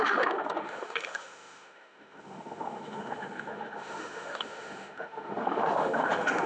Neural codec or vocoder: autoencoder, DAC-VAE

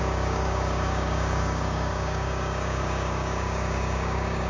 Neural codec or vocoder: codec, DAC